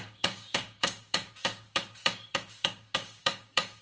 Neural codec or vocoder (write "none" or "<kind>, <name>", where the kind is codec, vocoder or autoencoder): codec, DAC